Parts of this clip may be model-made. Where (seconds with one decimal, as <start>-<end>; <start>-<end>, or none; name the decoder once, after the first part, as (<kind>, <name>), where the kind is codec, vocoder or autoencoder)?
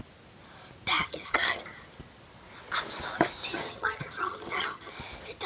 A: 1.0-1.6 (vocoder, HiFi-GAN); 3.5-4.9